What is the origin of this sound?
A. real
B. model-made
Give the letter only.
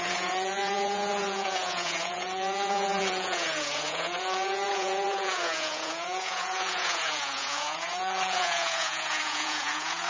B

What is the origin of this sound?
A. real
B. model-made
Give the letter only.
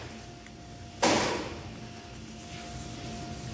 A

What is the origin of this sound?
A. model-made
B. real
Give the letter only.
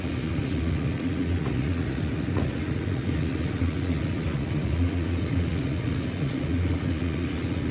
A